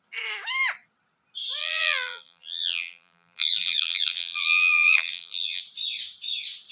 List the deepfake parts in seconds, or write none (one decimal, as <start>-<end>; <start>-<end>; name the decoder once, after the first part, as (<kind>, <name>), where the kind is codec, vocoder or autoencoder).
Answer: 1.6-5.6 (vocoder, BigVGAN v2)